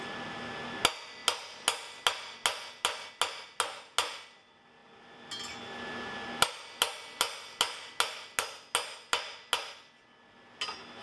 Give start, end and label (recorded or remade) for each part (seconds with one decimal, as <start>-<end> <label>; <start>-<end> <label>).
0.0-11.0 recorded